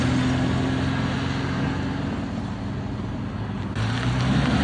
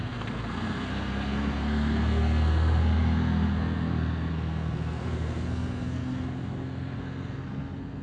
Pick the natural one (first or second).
first